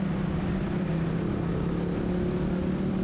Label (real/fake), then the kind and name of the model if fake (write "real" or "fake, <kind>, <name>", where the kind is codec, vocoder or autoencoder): real